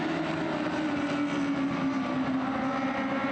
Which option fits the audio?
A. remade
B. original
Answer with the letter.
B